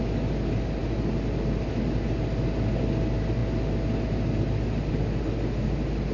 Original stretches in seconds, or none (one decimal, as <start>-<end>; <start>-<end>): 0.0-6.1